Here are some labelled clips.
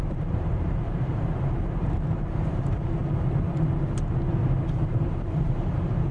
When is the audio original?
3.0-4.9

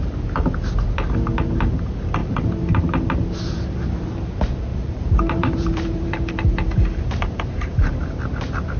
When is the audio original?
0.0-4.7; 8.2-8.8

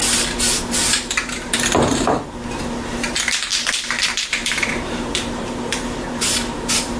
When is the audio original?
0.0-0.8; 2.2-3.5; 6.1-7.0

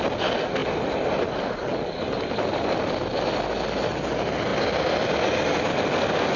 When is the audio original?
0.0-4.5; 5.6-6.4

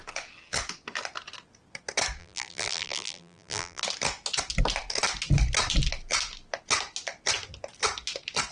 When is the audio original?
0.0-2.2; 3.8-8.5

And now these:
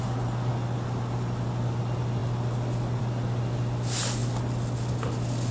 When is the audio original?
0.0-5.5